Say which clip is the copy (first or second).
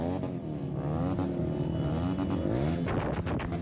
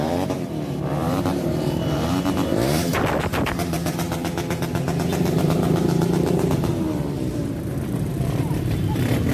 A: second